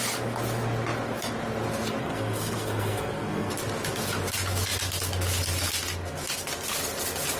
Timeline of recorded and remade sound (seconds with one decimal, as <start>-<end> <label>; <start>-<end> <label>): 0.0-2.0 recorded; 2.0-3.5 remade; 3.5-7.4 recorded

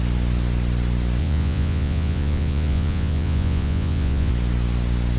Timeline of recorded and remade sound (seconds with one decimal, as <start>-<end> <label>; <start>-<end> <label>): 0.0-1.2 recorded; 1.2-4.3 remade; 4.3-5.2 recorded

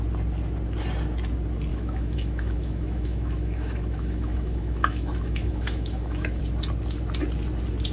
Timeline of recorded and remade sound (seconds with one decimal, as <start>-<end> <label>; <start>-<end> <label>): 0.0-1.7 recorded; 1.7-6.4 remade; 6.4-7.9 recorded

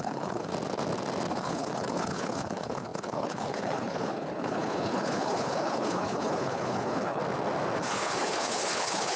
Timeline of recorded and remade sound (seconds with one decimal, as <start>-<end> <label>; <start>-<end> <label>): 0.0-0.5 remade; 0.5-1.3 recorded; 1.3-7.2 remade; 7.2-7.8 recorded; 7.8-9.2 remade

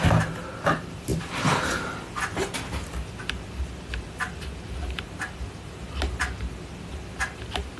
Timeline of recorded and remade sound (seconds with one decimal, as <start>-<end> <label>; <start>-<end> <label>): 0.0-7.8 recorded

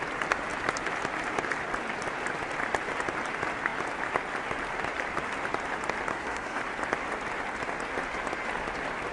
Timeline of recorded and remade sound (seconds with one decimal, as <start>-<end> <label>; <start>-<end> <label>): 0.0-6.1 recorded; 6.1-6.6 remade; 6.6-9.1 recorded

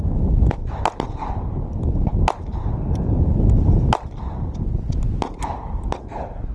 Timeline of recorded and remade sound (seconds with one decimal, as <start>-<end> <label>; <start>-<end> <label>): 0.0-6.5 recorded